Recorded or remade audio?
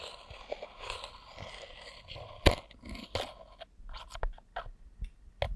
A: recorded